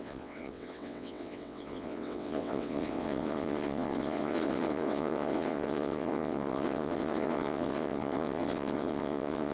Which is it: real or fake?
fake